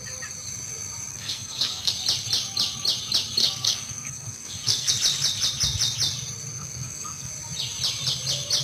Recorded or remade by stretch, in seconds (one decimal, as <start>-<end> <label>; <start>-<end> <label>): 0.0-1.1 recorded; 1.1-1.9 remade; 1.9-3.4 recorded; 3.4-4.9 remade; 4.9-6.5 recorded; 6.5-7.3 remade; 7.3-8.6 recorded